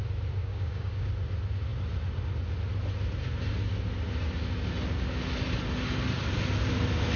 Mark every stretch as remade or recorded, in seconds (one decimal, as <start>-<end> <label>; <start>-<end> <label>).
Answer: 0.0-0.4 recorded; 0.4-1.1 remade; 1.1-7.2 recorded